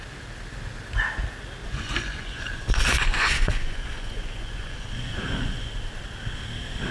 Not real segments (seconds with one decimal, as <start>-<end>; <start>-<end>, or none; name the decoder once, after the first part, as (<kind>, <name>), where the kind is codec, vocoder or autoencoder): 1.6-5.7 (vocoder, Vocos)